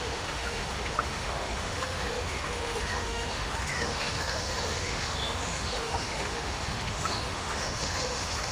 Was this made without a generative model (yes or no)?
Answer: no